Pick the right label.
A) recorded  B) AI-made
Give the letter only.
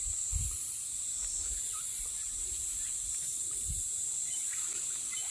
A